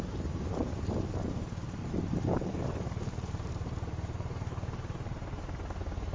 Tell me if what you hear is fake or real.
fake